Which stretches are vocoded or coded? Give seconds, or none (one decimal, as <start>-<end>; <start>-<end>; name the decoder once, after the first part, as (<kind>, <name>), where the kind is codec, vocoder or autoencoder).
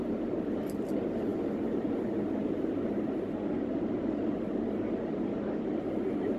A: none